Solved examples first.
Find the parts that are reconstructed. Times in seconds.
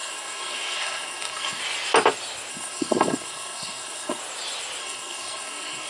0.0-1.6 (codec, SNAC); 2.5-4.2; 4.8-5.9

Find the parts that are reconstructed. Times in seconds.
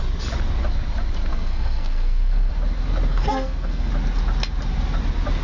1.3-2.5 (codec, SNAC); 3.1-3.9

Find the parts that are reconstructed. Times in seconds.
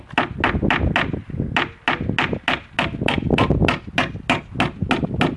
none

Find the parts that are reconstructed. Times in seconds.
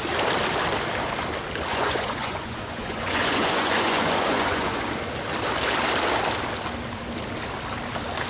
1.7-4.8 (vocoder, Vocos)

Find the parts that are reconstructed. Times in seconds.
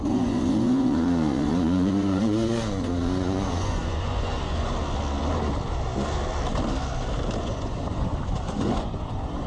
0.0-4.7 (vocoder, Vocos); 7.4-9.5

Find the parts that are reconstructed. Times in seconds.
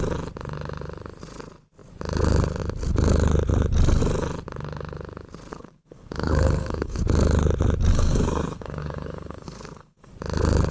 5.5-7.0 (codec, SNAC); 7.9-10.1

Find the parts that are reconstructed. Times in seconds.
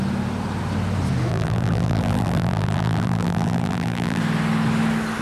1.3-4.2 (vocoder, BigVGAN v2)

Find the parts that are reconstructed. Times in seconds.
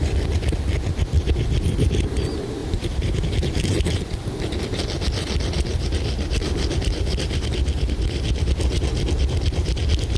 2.6-3.8 (vocoder, BigVGAN v2)